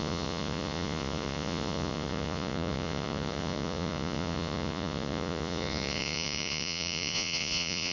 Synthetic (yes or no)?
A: yes